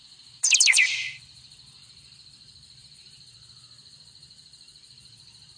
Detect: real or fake fake